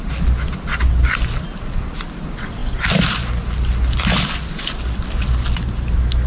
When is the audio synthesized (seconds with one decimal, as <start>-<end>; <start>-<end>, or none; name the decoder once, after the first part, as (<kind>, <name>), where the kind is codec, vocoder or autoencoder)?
none